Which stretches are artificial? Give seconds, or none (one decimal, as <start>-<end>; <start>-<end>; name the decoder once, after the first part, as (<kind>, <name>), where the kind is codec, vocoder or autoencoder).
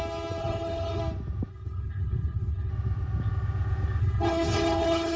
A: 0.4-1.0 (codec, HILCodec); 1.5-2.7; 4.0-5.2